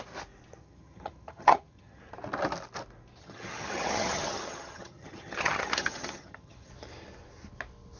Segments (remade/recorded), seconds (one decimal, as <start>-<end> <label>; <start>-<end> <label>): 0.0-0.6 recorded; 0.6-2.0 remade; 2.0-3.2 recorded; 3.2-6.7 remade; 6.7-8.0 recorded